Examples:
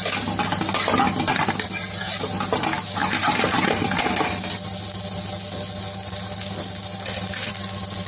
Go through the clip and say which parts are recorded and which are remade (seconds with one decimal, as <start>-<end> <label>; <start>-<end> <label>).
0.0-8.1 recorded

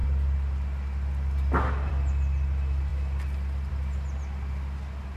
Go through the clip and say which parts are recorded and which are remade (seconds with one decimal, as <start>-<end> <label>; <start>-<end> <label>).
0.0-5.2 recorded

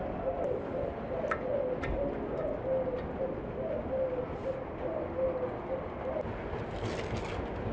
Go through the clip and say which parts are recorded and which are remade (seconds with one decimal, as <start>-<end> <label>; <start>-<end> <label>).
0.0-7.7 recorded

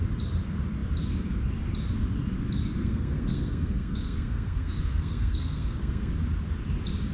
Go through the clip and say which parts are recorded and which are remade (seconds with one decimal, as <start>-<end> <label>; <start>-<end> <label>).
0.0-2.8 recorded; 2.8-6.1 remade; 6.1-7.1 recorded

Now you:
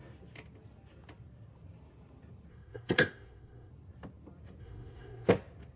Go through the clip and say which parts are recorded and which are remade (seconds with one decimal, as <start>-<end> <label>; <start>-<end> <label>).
0.0-2.5 recorded; 2.5-3.7 remade; 3.7-4.6 recorded; 4.6-5.3 remade; 5.3-5.8 recorded